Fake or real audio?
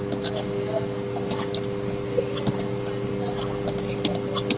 real